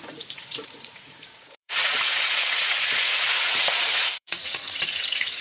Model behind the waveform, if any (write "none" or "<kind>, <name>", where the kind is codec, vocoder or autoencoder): vocoder, Vocos